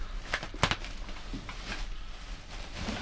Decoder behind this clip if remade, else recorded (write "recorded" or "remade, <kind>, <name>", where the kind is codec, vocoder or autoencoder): recorded